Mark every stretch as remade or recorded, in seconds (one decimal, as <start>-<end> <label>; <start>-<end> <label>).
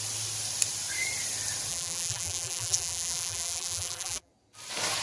0.0-1.7 recorded; 1.7-4.3 remade; 4.3-5.0 recorded